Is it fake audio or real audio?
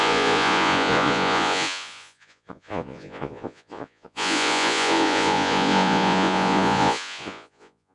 fake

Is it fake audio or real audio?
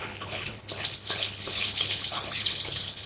fake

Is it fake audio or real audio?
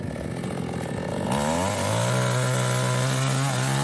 real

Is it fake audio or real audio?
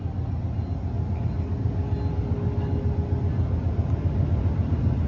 real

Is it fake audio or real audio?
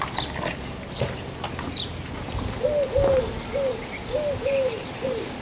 real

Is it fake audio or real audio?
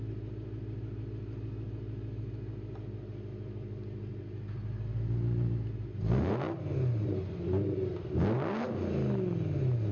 real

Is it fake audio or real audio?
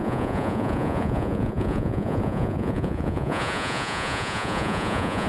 fake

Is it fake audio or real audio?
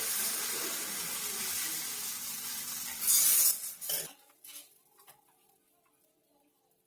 real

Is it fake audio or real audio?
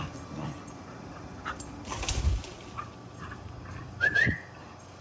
real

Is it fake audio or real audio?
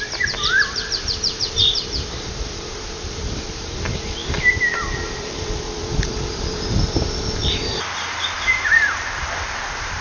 fake